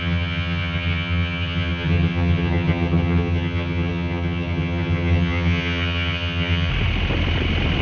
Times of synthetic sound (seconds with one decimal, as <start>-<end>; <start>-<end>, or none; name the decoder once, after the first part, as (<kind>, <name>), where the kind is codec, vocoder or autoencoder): 0.0-6.7 (vocoder, HiFi-GAN)